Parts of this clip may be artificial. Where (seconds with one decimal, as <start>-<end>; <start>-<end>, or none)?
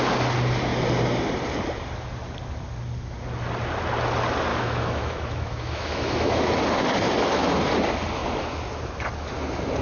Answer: 4.5-6.5